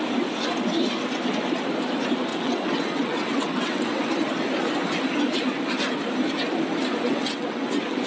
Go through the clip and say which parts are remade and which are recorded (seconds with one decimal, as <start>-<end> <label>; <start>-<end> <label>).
0.0-2.3 recorded; 2.3-4.1 remade; 4.1-6.9 recorded; 6.9-8.1 remade